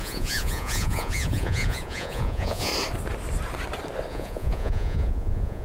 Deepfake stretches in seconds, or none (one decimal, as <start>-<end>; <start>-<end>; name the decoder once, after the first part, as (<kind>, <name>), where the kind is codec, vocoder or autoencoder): 0.0-2.7 (vocoder, Vocos); 4.1-5.6

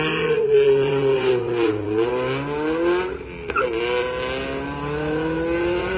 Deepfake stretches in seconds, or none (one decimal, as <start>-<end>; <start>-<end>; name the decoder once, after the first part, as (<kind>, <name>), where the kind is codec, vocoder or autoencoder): 0.0-2.1 (vocoder, Vocos); 5.6-6.0

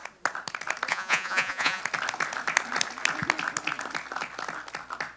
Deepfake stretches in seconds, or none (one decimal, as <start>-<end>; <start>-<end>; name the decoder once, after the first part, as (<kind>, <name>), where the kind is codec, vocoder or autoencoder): 0.9-1.8 (vocoder, Vocos)

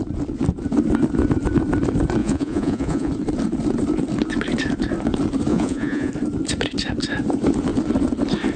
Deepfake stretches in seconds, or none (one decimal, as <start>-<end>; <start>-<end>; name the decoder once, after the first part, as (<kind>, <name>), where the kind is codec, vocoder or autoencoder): 2.2-3.1 (vocoder, Vocos); 5.5-6.1